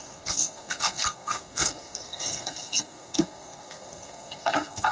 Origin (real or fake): fake